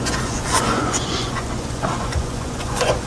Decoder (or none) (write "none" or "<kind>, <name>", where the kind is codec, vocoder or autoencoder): vocoder, Vocos